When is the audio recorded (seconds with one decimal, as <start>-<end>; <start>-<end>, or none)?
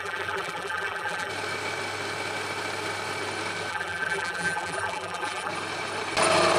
1.3-3.7; 5.5-6.6